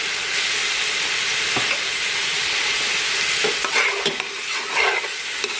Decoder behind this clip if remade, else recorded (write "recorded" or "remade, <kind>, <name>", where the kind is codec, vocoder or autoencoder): recorded